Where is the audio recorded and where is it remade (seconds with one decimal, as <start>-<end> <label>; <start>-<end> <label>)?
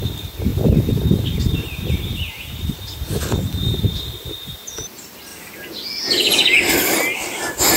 0.0-0.5 recorded; 0.5-3.0 remade; 3.0-3.6 recorded; 3.6-4.7 remade; 4.7-7.8 recorded